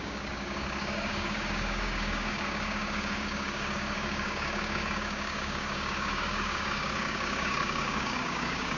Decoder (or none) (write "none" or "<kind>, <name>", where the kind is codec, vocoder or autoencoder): codec, DAC